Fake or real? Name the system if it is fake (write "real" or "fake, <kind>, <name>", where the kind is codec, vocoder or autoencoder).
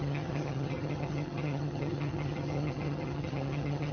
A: fake, vocoder, HiFi-GAN